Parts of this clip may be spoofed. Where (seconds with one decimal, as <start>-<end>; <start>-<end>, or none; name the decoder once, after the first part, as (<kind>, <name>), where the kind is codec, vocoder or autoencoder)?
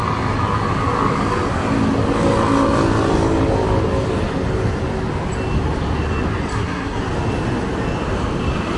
6.5-7.0 (codec, SNAC)